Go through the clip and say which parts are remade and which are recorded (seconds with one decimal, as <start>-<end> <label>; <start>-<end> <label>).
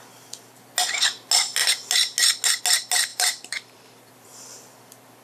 0.0-3.1 recorded; 3.1-4.4 remade; 4.4-5.2 recorded